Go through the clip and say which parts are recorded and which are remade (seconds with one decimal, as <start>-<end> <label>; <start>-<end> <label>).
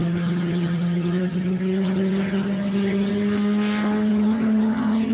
0.0-3.1 remade; 3.1-4.1 recorded; 4.1-5.1 remade